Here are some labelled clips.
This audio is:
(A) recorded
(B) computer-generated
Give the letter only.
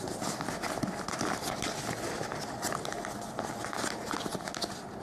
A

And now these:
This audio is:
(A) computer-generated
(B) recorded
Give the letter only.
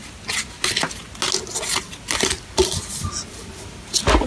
B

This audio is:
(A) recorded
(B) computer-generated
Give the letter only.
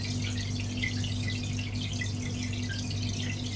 A